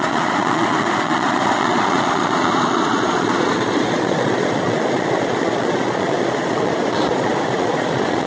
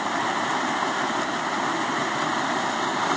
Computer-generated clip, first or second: first